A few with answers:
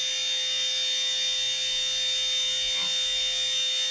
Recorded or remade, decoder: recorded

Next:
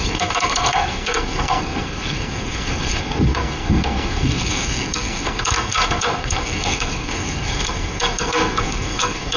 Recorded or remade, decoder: remade, codec, SNAC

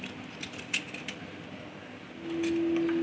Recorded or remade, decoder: recorded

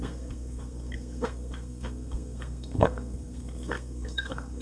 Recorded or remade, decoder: remade, codec, SNAC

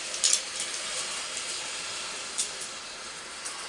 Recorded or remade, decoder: recorded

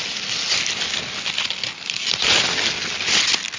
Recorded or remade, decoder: recorded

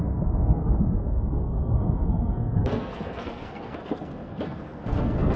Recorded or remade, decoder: remade, codec, SNAC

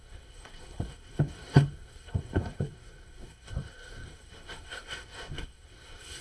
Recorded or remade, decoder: remade, codec, SNAC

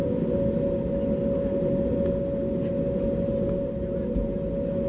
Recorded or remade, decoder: recorded